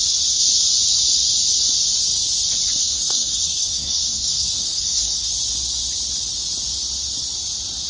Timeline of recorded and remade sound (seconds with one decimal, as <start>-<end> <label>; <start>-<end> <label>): 0.0-2.8 recorded; 2.8-5.3 remade; 5.3-7.9 recorded